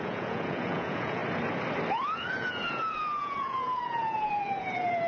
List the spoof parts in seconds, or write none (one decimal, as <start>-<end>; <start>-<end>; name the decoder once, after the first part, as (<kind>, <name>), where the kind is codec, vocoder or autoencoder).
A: 0.0-1.2 (vocoder, Vocos); 1.9-5.1